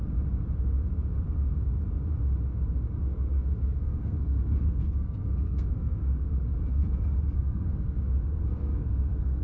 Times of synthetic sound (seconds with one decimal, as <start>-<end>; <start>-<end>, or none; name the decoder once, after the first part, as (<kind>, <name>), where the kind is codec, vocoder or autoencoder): 3.1-6.3 (codec, SNAC); 6.7-8.1; 8.5-9.4